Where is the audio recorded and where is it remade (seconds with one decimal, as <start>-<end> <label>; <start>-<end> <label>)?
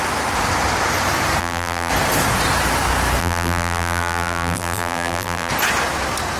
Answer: 0.0-1.4 recorded; 1.4-1.9 remade; 1.9-3.2 recorded; 3.2-5.5 remade; 5.5-6.4 recorded